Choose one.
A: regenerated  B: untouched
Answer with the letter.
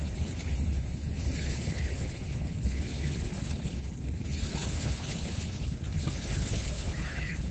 A